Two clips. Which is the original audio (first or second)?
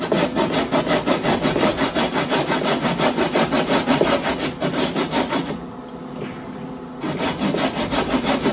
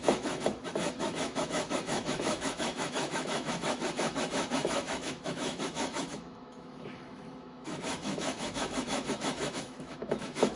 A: first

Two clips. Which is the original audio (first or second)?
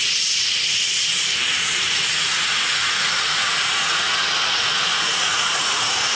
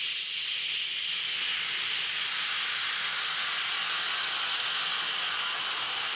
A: second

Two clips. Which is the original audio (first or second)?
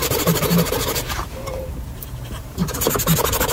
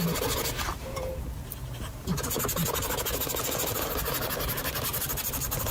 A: second